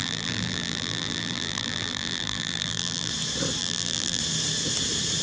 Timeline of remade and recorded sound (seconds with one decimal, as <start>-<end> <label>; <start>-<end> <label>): 0.0-3.1 remade; 3.1-3.6 recorded; 3.6-4.2 remade; 4.2-5.2 recorded

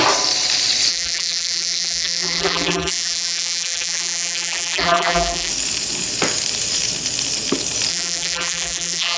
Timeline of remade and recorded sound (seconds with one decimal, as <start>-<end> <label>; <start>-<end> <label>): 0.0-0.9 recorded; 0.9-5.5 remade; 5.5-7.9 recorded; 7.9-9.2 remade